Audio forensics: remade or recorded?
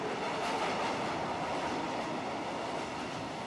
recorded